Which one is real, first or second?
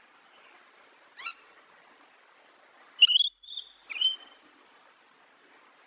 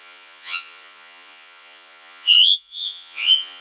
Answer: first